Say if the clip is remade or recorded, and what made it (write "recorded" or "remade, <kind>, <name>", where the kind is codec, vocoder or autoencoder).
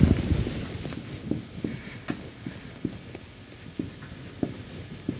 recorded